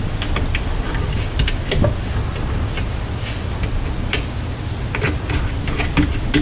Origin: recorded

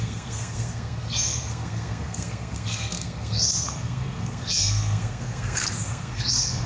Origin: remade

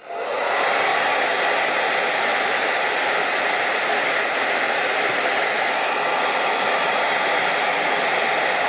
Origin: recorded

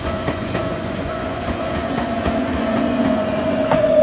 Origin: remade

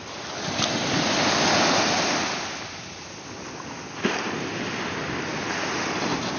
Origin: recorded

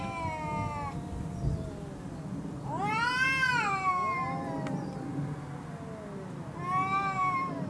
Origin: recorded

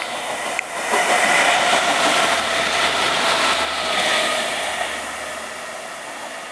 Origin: recorded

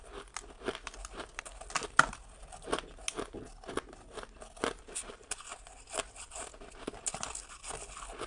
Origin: recorded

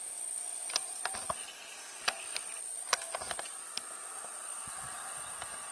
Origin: recorded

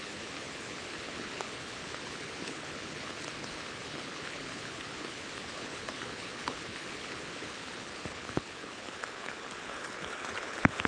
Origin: remade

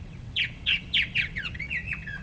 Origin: remade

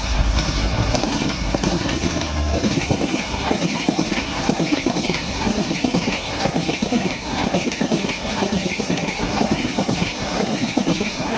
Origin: remade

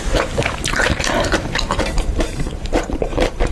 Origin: remade